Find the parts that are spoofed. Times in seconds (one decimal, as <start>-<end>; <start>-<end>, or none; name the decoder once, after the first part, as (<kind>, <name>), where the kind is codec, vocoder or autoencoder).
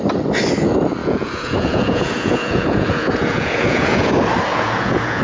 1.0-4.1 (vocoder, Vocos); 4.5-5.2